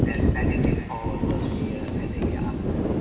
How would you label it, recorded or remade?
recorded